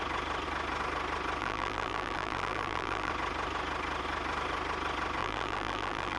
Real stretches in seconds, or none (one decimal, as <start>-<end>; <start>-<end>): 0.0-1.4; 3.1-5.2

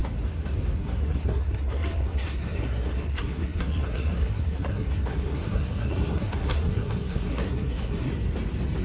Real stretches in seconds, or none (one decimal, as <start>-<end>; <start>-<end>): 0.0-0.8; 8.1-8.8

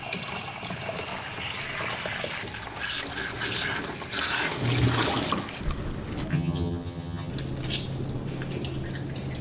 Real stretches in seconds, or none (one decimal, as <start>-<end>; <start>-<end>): 0.0-6.3; 7.3-9.4

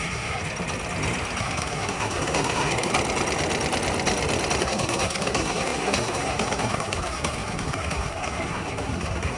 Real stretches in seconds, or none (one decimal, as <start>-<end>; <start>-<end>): 0.4-1.4; 2.9-4.6

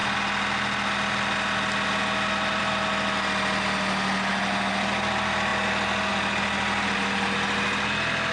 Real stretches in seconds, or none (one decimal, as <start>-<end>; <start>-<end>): 0.0-8.3

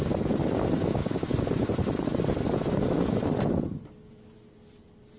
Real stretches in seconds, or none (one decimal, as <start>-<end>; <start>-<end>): 0.0-5.2

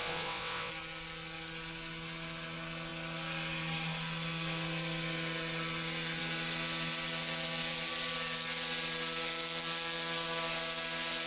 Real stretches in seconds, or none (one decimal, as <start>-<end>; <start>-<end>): 0.7-11.3